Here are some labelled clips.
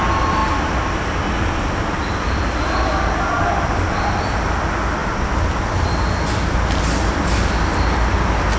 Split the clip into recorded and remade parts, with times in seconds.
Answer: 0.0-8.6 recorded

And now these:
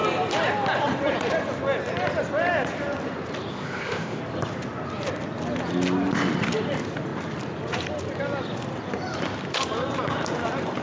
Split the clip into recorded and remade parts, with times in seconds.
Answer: 0.0-3.5 recorded; 3.5-4.2 remade; 4.2-10.8 recorded

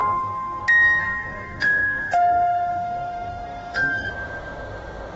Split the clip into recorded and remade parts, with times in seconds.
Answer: 0.0-0.6 remade; 0.6-1.0 recorded; 1.0-4.1 remade; 4.1-5.2 recorded